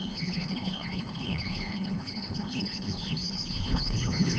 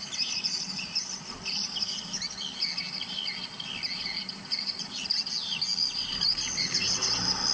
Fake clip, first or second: first